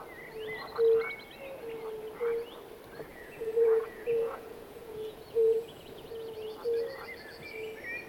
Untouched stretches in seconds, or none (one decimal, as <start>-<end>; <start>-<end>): 0.0-3.1; 6.1-8.1